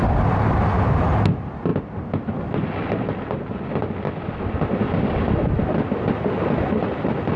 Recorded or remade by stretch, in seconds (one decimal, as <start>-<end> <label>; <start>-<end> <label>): 0.0-7.4 recorded